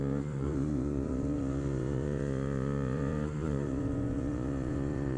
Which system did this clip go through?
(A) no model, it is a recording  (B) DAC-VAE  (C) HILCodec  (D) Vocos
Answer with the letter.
D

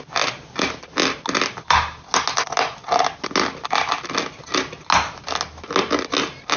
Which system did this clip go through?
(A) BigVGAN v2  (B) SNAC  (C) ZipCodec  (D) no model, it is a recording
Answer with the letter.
D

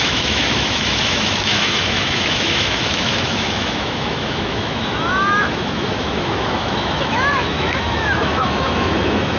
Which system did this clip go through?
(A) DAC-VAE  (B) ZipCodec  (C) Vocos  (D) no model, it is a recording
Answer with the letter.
A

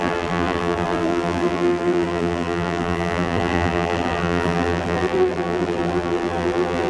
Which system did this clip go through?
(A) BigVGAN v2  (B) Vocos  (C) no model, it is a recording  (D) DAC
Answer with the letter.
A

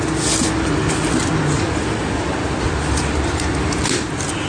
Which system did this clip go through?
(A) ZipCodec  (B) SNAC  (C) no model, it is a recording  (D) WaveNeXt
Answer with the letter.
C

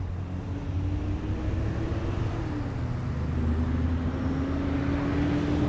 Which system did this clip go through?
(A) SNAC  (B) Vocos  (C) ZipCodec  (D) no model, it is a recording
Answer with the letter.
D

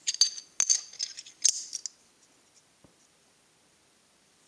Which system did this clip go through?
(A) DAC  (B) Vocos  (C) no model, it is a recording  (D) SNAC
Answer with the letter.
C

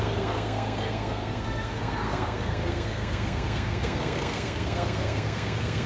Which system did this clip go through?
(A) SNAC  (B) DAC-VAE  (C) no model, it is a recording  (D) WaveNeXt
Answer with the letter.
A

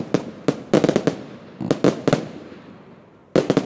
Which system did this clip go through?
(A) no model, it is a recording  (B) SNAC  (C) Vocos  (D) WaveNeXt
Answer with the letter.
A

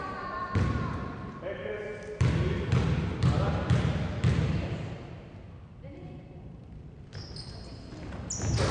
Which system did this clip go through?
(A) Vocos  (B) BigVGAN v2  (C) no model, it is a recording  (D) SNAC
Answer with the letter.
C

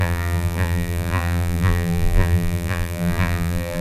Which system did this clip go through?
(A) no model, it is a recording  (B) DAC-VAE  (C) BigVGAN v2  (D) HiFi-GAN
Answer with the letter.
C